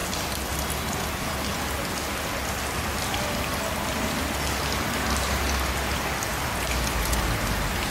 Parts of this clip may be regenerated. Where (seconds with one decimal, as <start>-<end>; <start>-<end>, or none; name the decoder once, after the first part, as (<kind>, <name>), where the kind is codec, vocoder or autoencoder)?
none